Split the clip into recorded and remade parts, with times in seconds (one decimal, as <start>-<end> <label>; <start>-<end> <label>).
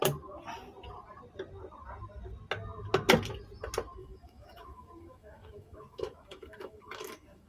0.0-4.0 recorded; 4.0-7.5 remade